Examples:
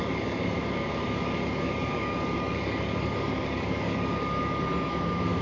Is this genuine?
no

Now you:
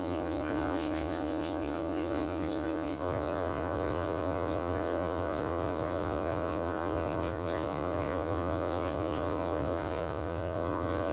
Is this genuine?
no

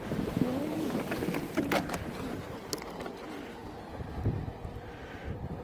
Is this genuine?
yes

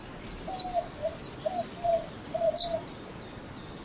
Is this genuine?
yes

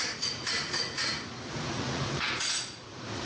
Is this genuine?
no